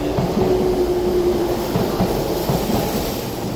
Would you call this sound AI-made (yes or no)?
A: no